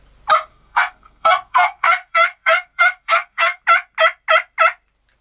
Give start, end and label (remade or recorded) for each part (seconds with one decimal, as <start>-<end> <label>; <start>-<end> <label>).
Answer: 0.0-0.5 recorded; 0.5-3.6 remade; 3.6-5.2 recorded